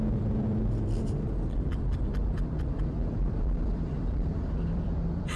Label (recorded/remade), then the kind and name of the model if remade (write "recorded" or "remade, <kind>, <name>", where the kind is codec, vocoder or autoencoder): remade, vocoder, BigVGAN v2